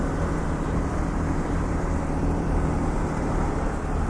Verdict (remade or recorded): remade